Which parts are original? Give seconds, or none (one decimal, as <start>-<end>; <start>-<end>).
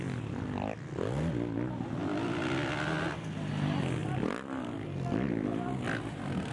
0.0-6.5